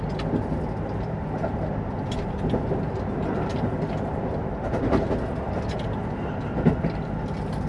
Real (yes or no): yes